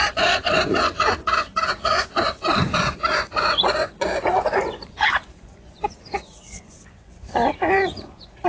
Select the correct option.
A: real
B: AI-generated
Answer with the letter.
B